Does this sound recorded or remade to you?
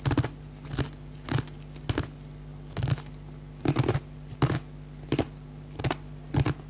recorded